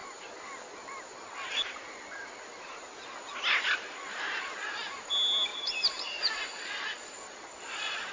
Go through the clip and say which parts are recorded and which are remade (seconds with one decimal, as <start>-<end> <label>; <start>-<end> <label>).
0.0-4.1 recorded; 4.1-5.0 remade; 5.0-5.5 recorded; 5.5-8.1 remade